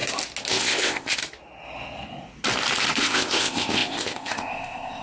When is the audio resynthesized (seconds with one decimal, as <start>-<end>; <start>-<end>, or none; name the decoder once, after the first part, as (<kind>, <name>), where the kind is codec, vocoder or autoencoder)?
0.5-1.2 (codec, ZipCodec); 3.0-5.0